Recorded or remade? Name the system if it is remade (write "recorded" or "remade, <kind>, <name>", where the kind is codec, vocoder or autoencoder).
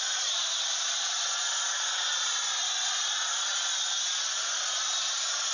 recorded